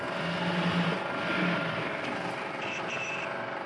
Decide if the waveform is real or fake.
real